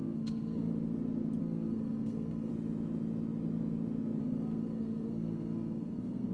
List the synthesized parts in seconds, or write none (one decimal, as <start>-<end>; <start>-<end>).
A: 0.0-0.7; 1.4-2.5; 4.2-6.3